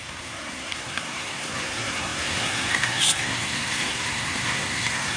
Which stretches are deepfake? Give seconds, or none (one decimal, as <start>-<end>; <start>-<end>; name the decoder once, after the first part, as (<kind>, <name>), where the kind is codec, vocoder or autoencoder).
0.0-5.2 (codec, SNAC)